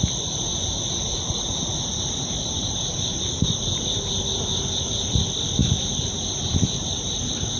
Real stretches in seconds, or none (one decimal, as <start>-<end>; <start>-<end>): 0.0-0.5; 5.1-5.6; 7.1-7.6